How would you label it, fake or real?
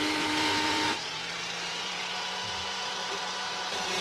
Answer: fake